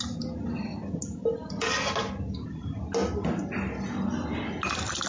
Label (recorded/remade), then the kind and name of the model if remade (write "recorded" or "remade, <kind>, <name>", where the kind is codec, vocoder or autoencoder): recorded